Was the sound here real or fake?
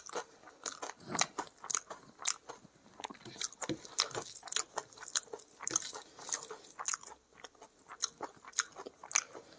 real